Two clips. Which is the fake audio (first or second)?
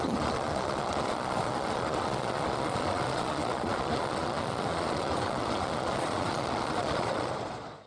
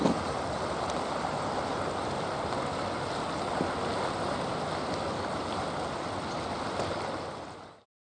first